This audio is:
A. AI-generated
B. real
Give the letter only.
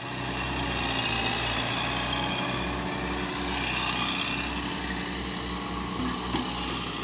B